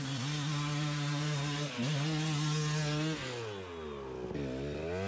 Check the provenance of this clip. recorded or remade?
recorded